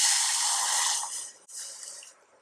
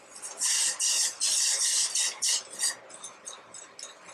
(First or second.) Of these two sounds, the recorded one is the second